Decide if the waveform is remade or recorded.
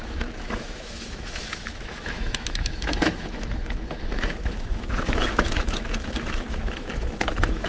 remade